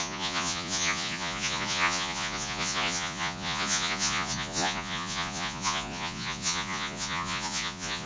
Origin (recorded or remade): remade